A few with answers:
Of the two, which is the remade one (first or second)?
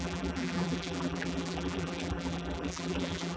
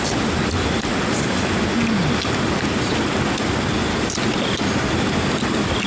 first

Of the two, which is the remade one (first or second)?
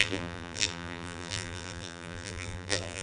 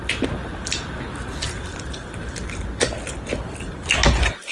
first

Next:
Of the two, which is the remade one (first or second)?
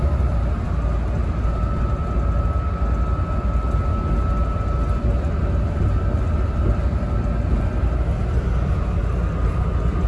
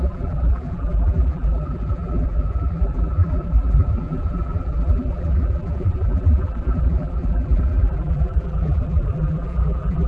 second